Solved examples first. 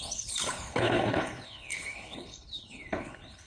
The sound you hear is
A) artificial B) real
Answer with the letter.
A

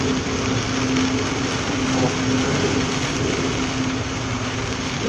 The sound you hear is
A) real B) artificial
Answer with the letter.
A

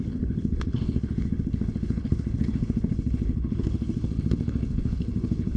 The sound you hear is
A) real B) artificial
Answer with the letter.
B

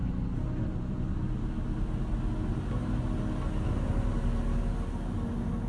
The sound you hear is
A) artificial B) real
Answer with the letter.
B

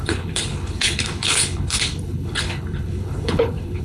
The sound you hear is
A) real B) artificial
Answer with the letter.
B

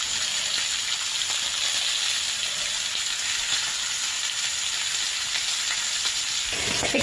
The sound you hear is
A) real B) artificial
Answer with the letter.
A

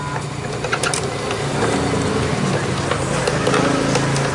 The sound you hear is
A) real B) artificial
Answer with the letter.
A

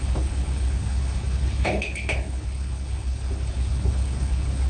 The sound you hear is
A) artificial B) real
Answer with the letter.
A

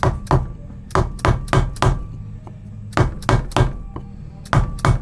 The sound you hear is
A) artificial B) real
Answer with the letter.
B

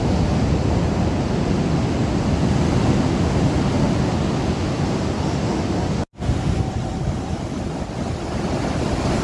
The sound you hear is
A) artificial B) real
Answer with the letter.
B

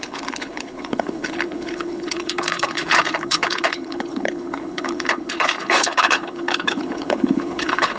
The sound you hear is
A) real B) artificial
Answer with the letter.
B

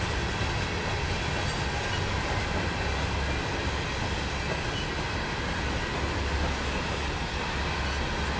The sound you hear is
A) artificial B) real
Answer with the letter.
B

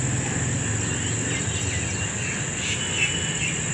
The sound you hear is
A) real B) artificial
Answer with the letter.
A